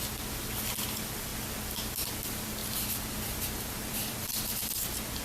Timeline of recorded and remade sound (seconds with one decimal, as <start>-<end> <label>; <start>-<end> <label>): 0.0-2.6 recorded; 2.6-4.7 remade; 4.7-5.2 recorded